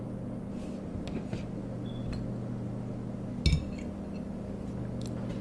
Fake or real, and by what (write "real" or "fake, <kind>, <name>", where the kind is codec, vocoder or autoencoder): real